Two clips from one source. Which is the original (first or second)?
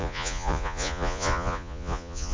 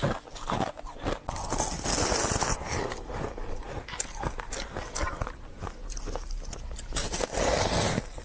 second